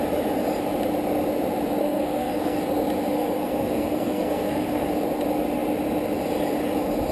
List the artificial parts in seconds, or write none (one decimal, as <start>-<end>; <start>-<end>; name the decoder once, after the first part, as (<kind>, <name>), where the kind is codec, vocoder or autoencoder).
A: 1.8-2.6 (codec, SNAC); 3.1-4.9